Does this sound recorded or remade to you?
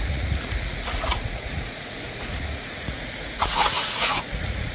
remade